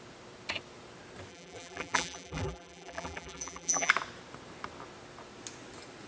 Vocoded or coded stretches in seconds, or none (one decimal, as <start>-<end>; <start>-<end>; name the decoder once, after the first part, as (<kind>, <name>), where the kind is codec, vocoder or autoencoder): 1.3-3.9 (vocoder, BigVGAN v2)